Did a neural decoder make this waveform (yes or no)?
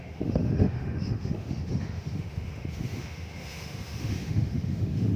yes